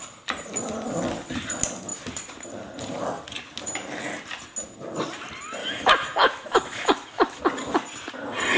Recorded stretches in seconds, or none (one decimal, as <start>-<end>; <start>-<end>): 0.0-5.6; 7.4-8.6